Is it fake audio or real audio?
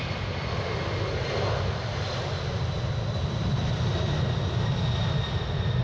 real